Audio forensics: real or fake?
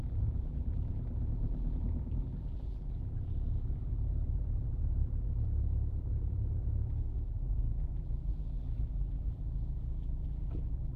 fake